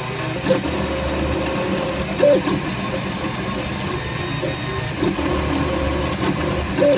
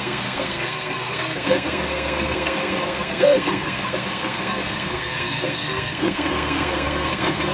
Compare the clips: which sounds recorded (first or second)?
first